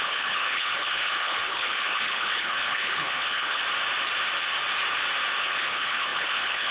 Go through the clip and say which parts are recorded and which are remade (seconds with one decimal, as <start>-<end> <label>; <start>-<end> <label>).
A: 0.0-3.6 remade; 3.6-5.4 recorded; 5.4-6.7 remade

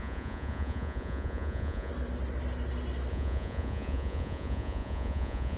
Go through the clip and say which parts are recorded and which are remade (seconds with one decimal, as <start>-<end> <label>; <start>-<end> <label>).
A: 0.0-1.9 remade; 1.9-3.1 recorded; 3.1-5.6 remade

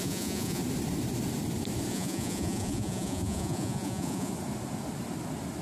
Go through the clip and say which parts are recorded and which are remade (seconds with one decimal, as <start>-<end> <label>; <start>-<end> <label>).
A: 0.0-0.6 remade; 0.6-1.9 recorded; 1.9-4.3 remade; 4.3-5.6 recorded

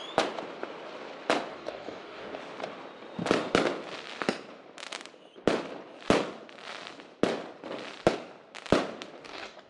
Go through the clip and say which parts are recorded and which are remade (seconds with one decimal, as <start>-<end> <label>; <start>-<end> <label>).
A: 0.0-1.5 recorded; 1.5-2.4 remade; 2.4-9.2 recorded; 9.2-9.7 remade